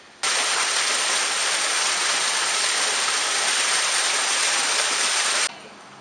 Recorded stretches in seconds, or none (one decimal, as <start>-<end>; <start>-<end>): 0.0-6.0